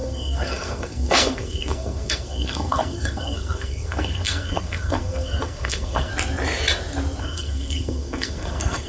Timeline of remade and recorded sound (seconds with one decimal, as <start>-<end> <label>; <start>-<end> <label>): 0.0-6.1 remade; 6.1-7.2 recorded; 7.2-8.9 remade